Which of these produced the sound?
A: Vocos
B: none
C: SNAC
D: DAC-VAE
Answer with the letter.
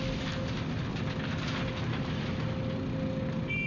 B